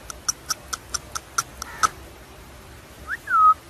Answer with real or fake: real